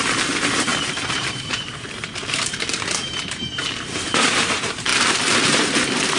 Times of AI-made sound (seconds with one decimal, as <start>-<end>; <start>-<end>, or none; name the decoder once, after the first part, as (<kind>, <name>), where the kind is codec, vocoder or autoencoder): 0.0-6.2 (vocoder, BigVGAN v2)